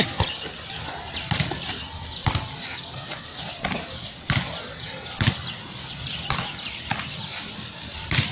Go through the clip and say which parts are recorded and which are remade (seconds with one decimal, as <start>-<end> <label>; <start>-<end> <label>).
0.0-8.3 recorded